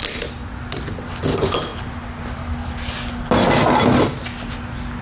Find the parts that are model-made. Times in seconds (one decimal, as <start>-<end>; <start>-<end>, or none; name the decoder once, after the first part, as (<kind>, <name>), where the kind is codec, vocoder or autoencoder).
none